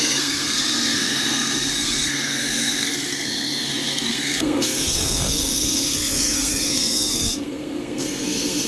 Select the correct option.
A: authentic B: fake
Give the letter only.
B